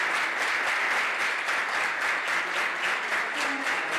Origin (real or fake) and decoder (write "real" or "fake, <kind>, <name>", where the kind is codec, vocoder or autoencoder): real